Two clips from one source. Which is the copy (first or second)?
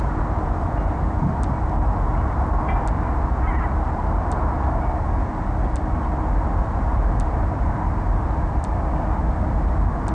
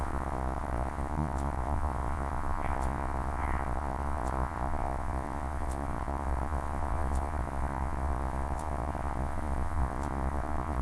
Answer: second